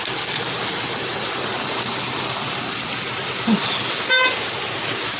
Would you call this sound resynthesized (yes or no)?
no